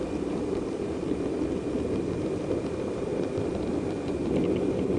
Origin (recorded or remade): remade